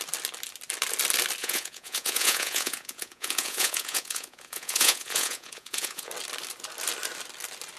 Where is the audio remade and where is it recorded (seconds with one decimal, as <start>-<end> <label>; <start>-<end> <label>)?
0.0-1.4 recorded; 1.4-6.1 remade; 6.1-7.8 recorded